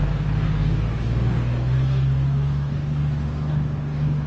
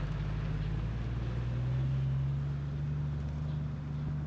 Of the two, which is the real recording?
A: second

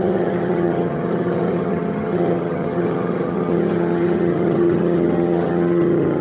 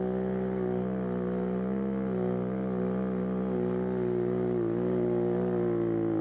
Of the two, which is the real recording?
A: second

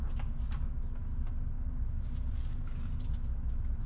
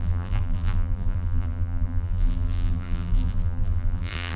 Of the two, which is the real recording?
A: first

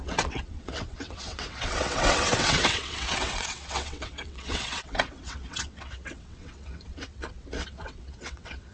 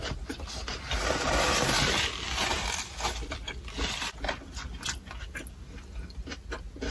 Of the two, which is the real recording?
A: second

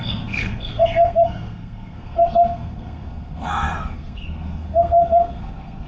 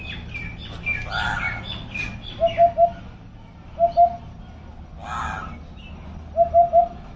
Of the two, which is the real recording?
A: second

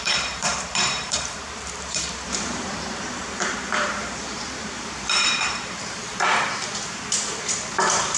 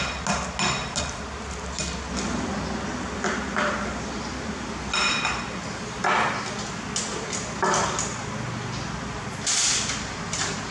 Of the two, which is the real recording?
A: second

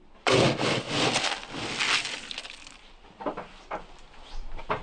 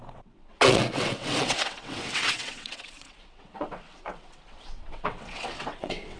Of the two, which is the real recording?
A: first